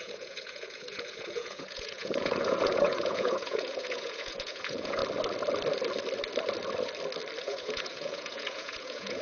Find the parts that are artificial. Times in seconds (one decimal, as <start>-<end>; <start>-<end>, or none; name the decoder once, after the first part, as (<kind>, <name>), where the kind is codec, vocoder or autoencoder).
0.0-5.0 (vocoder, Vocos); 7.4-9.2